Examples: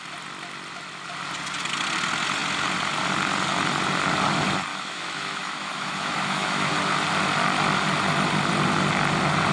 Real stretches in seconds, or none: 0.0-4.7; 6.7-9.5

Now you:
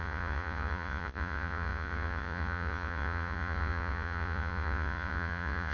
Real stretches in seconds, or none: none

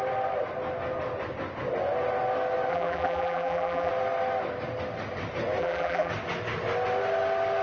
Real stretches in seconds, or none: 0.0-2.7; 3.9-5.6; 6.1-7.6

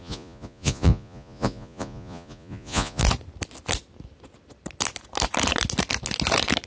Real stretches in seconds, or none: 3.0-6.7

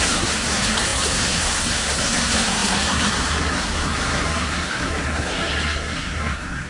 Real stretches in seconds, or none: none

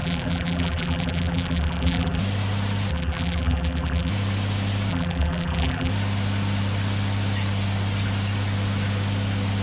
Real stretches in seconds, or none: 2.2-2.9; 4.1-4.9; 5.9-9.6